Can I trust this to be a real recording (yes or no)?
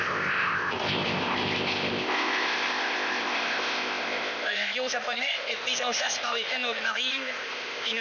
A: no